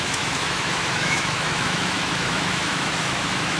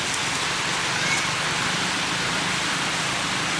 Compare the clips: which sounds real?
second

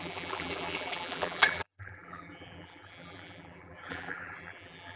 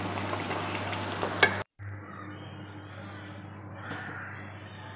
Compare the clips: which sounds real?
second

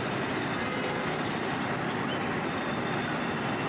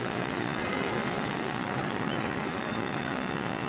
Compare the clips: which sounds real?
first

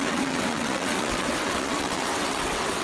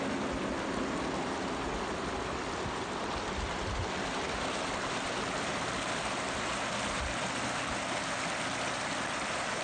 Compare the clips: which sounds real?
second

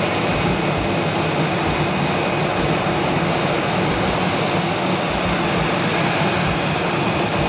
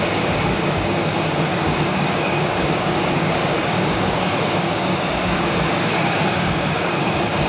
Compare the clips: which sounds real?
first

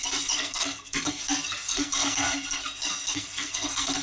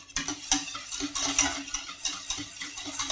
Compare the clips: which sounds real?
second